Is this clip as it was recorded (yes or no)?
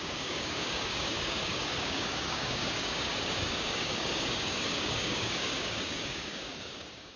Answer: no